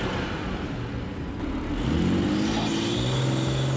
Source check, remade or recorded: recorded